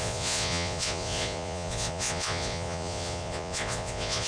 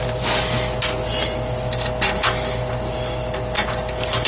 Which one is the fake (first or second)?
first